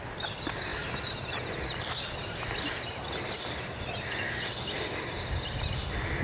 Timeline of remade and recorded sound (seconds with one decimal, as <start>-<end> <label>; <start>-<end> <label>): 0.0-6.2 recorded